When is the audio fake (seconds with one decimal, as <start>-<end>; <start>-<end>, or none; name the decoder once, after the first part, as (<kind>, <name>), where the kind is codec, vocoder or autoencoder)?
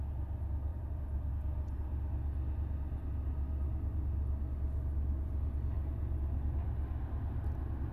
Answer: 0.7-1.3 (vocoder, BigVGAN v2)